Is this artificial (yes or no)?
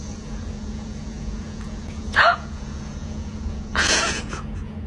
yes